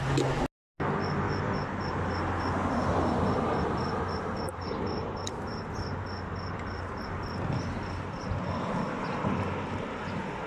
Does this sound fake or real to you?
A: real